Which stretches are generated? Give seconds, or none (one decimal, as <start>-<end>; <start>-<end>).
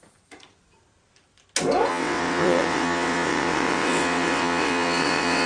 1.9-5.5